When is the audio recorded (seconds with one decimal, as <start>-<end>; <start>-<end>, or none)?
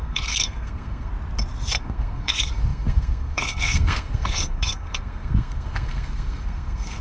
1.1-1.8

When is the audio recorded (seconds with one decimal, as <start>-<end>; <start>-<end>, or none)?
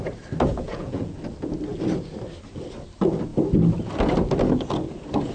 0.0-0.5; 1.2-5.3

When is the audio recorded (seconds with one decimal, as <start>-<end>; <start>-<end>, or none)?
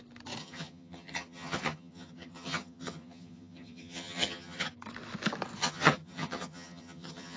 0.0-0.4; 4.7-5.6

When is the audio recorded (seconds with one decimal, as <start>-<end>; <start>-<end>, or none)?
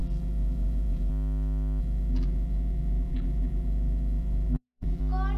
1.1-1.8; 5.0-5.4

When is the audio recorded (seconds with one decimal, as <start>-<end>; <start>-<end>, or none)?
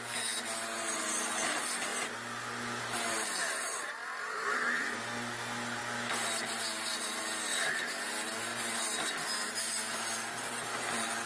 0.0-11.3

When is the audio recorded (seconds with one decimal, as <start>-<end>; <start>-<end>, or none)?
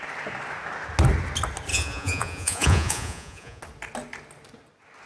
0.0-1.7; 3.6-5.1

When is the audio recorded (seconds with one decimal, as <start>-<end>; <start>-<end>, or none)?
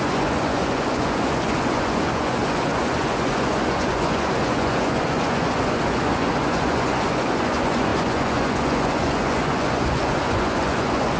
none